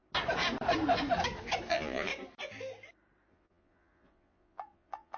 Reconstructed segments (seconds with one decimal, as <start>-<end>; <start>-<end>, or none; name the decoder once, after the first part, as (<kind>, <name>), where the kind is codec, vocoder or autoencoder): 1.7-2.1 (vocoder, Vocos); 3.3-5.2